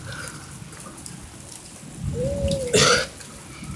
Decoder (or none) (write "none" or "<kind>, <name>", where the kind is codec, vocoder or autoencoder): none